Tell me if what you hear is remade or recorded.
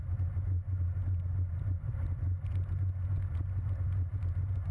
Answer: recorded